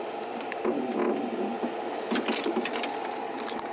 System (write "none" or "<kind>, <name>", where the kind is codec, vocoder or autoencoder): none